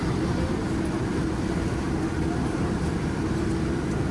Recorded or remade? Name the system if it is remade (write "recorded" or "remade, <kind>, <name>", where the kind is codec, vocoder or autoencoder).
recorded